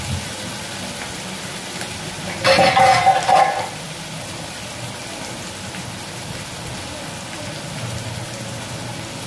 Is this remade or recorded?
recorded